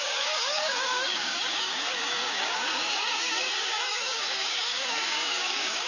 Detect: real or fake fake